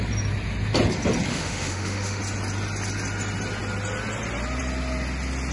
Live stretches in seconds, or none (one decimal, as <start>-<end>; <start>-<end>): 0.0-1.3; 2.2-5.5